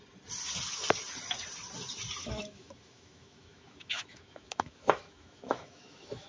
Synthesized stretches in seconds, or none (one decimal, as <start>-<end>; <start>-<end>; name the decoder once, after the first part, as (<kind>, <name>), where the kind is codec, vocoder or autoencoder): 2.2-6.3 (autoencoder, DAC-VAE)